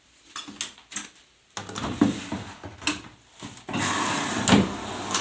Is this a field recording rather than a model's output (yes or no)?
yes